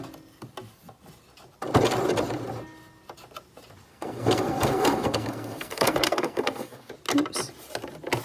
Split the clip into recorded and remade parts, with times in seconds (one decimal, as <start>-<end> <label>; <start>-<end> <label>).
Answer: 0.0-3.9 recorded; 3.9-6.9 remade; 6.9-8.2 recorded